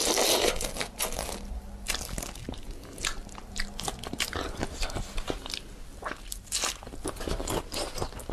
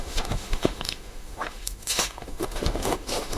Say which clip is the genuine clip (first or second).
first